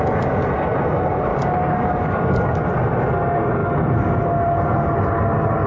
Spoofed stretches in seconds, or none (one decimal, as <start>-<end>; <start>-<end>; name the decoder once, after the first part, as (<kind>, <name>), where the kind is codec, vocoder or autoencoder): 1.3-2.6 (codec, DAC)